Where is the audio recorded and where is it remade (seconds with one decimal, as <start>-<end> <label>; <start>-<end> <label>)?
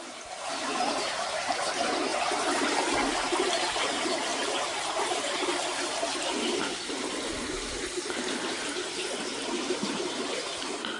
0.0-4.3 recorded; 4.3-6.2 remade; 6.2-11.0 recorded